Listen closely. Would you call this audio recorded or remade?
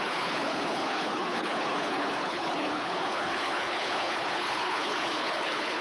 remade